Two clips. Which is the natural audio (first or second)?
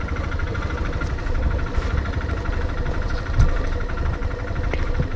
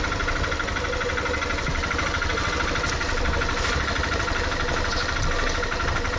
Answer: second